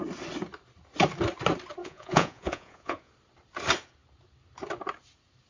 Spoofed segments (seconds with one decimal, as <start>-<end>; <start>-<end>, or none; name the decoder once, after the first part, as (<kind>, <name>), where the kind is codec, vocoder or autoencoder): 1.8-3.1 (vocoder, Vocos)